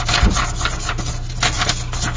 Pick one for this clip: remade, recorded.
recorded